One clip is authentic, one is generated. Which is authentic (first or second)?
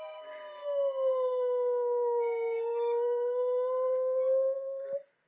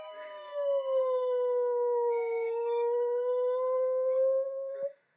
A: first